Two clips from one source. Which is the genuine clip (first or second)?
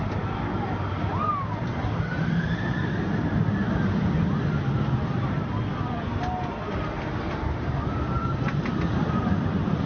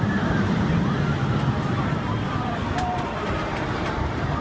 first